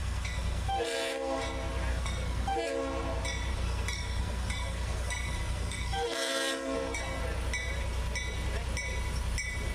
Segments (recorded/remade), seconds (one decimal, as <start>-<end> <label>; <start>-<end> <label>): 0.0-1.4 remade; 1.4-1.9 recorded; 1.9-2.7 remade; 2.7-3.5 recorded; 3.5-7.2 remade; 7.2-9.7 recorded

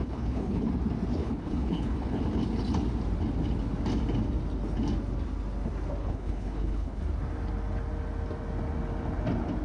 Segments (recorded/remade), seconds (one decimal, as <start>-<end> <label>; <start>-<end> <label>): 0.0-0.7 remade; 0.7-1.1 recorded; 1.1-2.2 remade; 2.2-6.0 recorded; 6.0-7.0 remade; 7.0-9.6 recorded

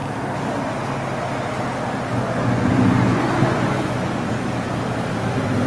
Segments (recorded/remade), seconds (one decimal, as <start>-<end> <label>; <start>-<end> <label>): 0.0-2.1 recorded; 2.1-4.3 remade; 4.3-5.7 recorded

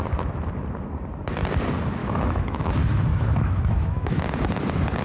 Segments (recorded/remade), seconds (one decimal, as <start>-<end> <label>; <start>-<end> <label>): 0.0-2.0 recorded; 2.0-2.7 remade; 2.7-3.1 recorded; 3.1-4.2 remade; 4.2-5.0 recorded